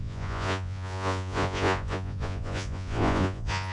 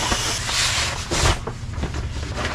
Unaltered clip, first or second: second